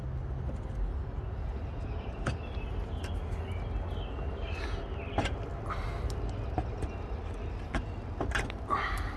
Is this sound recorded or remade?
recorded